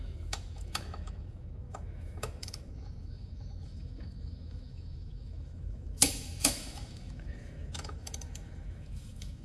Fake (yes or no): yes